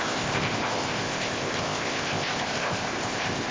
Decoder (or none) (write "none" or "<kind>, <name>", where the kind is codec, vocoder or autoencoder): codec, ZipCodec